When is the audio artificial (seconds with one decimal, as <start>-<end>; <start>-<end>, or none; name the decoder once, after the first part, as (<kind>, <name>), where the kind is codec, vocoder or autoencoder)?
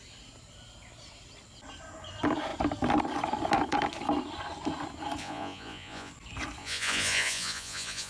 5.2-6.1 (vocoder, Vocos); 6.6-8.1